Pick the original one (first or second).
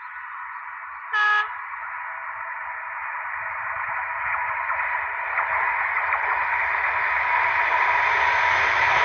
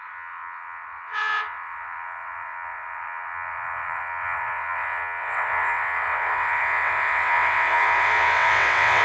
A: first